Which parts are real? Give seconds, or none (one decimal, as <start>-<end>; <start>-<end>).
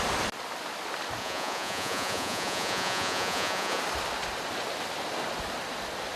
0.0-1.2; 3.8-6.2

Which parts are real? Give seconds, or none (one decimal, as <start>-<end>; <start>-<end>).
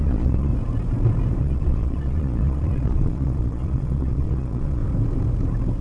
0.5-1.4; 4.8-5.8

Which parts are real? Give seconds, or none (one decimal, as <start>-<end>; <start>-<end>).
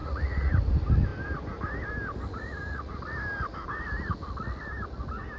0.5-2.3; 3.0-5.4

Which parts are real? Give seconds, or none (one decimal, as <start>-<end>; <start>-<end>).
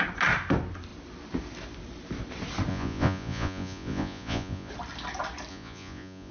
0.0-2.7; 4.7-5.5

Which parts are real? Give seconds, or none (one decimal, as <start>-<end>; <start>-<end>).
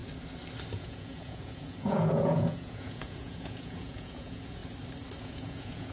0.0-0.7; 4.6-5.2